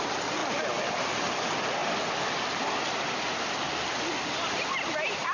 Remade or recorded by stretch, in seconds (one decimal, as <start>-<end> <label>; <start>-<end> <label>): 0.0-5.3 recorded